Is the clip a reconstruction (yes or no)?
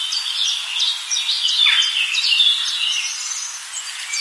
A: no